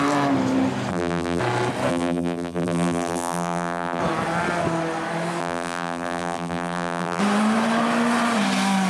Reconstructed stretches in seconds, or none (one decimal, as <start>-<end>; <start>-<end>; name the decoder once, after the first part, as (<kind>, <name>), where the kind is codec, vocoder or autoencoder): 0.9-1.4 (vocoder, BigVGAN v2); 1.9-4.0; 5.4-7.2